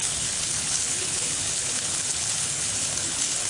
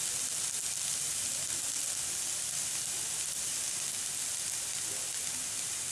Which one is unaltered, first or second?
second